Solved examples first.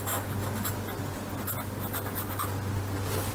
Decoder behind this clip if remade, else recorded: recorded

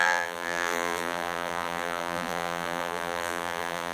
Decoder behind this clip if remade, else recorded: remade, vocoder, BigVGAN v2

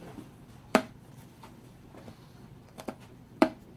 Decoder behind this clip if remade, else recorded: remade, vocoder, BigVGAN v2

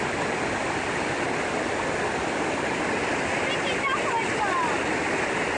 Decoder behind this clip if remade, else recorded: recorded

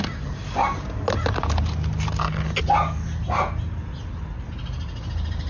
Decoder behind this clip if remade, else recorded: recorded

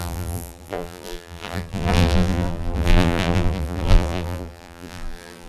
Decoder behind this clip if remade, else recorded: remade, vocoder, BigVGAN v2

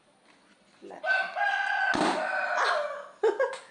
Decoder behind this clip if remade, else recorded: recorded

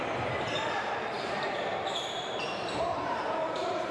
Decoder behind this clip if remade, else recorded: remade, vocoder, BigVGAN v2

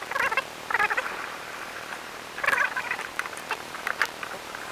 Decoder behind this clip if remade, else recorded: remade, vocoder, BigVGAN v2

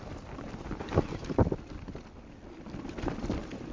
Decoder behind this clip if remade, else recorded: recorded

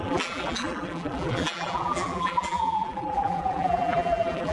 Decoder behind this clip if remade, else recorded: remade, vocoder, BigVGAN v2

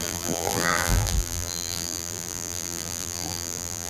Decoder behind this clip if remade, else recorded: remade, vocoder, BigVGAN v2